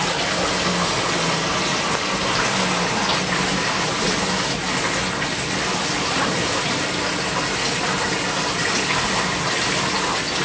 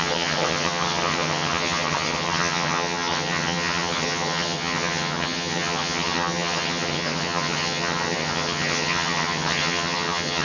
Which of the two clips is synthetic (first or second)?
second